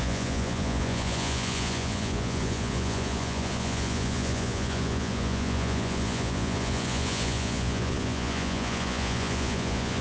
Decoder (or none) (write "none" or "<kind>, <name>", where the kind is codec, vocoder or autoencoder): vocoder, Vocos